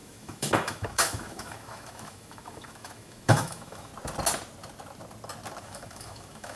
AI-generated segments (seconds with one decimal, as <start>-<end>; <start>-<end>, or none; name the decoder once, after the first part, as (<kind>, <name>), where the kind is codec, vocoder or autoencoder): 0.0-3.9 (autoencoder, DAC-VAE); 5.6-6.6